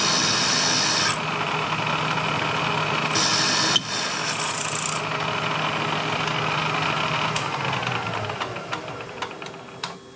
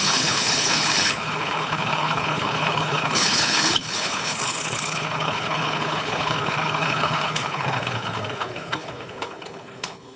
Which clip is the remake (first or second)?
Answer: second